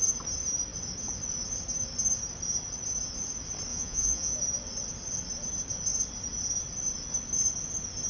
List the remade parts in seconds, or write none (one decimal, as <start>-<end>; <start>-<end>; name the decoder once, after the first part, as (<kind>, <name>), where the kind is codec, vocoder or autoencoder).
3.7-4.3 (vocoder, Vocos)